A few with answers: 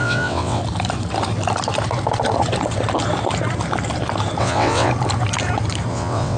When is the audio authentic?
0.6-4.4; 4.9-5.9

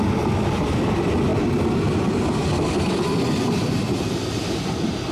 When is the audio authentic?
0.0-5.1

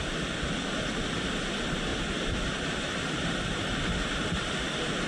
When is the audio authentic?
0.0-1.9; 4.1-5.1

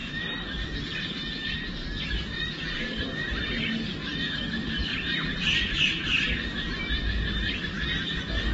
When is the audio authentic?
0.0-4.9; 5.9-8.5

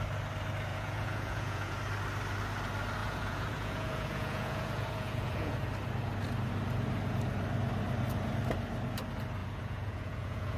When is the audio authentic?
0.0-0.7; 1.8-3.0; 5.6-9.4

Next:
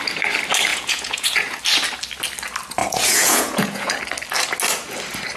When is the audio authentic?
0.0-0.7; 1.6-2.8; 4.0-5.4

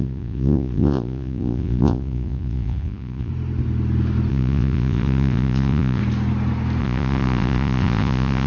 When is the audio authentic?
3.3-4.3; 6.0-6.8

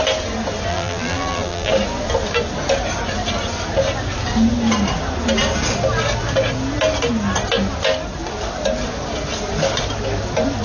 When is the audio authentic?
0.0-0.7; 1.7-10.6